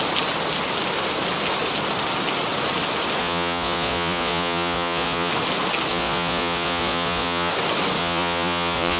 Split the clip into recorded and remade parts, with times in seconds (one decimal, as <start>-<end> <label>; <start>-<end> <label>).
0.0-3.2 recorded; 3.2-5.3 remade; 5.3-5.9 recorded; 5.9-7.5 remade; 7.5-8.0 recorded; 8.0-9.0 remade